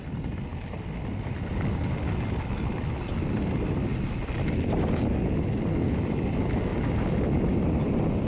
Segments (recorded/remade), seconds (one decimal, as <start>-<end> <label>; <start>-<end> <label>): 0.0-3.9 remade; 3.9-6.0 recorded; 6.0-6.7 remade; 6.7-7.7 recorded; 7.7-8.3 remade